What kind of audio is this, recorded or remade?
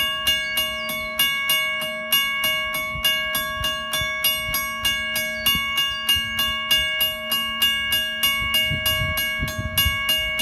recorded